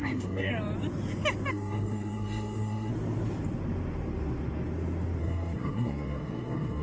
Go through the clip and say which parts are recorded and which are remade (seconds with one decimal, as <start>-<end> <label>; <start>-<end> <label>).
0.0-0.5 remade; 0.5-1.5 recorded; 1.5-2.9 remade; 2.9-5.2 recorded; 5.2-6.8 remade